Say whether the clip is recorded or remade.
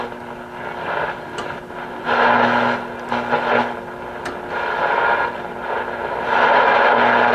recorded